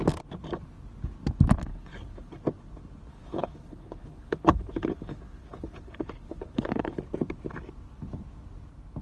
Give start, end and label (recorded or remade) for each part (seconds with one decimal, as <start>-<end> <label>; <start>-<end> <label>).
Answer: 0.0-1.7 recorded; 1.7-2.4 remade; 2.4-3.1 recorded; 3.1-7.0 remade; 7.0-9.0 recorded